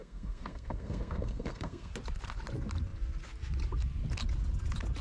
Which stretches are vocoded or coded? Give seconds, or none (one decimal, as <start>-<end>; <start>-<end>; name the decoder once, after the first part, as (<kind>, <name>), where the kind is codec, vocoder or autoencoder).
0.0-1.9 (codec, SNAC)